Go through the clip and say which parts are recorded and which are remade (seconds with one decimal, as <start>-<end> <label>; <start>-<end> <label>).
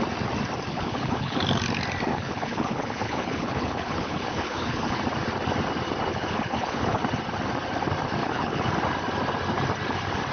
0.0-0.7 recorded; 0.7-1.4 remade; 1.4-2.1 recorded; 2.1-5.0 remade; 5.0-6.1 recorded; 6.1-7.0 remade; 7.0-8.2 recorded; 8.2-8.7 remade; 8.7-10.3 recorded